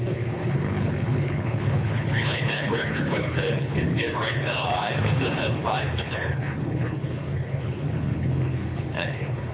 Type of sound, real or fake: fake